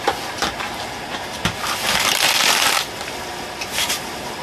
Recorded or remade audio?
remade